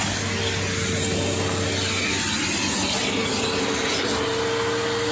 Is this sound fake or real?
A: real